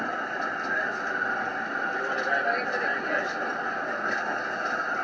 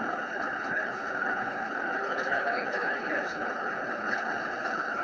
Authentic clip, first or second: first